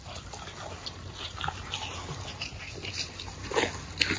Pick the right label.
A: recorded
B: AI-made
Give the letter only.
A